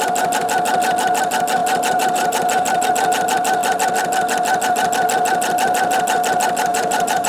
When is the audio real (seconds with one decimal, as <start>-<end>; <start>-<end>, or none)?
0.0-1.6; 2.9-6.7